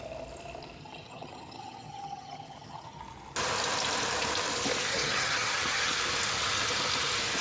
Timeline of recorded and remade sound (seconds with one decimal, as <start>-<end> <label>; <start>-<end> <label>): 0.0-0.8 recorded; 0.8-3.0 remade; 3.0-4.9 recorded; 4.9-6.0 remade; 6.0-7.4 recorded